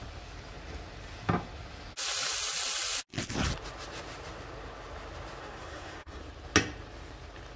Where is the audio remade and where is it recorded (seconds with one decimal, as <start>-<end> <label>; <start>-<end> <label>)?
0.0-5.4 recorded; 5.4-6.2 remade; 6.2-7.6 recorded